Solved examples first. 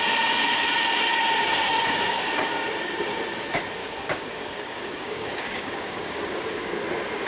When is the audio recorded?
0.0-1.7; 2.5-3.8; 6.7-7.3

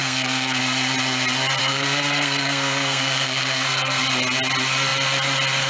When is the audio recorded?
0.6-1.6; 4.0-5.7

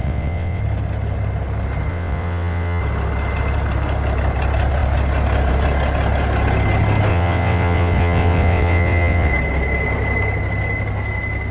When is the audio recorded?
0.6-1.9; 2.8-7.1; 9.3-11.5

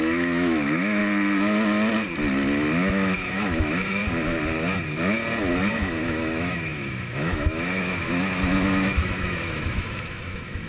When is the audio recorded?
1.0-2.9; 4.0-5.7

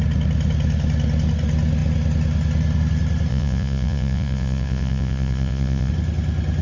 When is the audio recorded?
0.0-3.3; 5.9-6.6

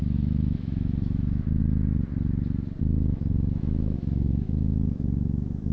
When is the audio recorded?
1.6-2.8

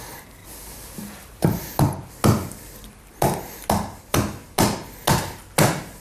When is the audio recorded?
0.0-0.4; 1.7-6.0